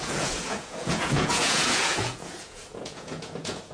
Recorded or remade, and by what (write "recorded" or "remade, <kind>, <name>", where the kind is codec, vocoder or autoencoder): remade, vocoder, Vocos